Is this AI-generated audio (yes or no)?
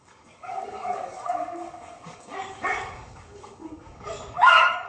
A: yes